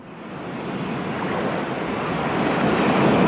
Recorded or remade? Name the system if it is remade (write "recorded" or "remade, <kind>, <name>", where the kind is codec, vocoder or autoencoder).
recorded